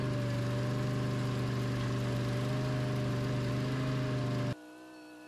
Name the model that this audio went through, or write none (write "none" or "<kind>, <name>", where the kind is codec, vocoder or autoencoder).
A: none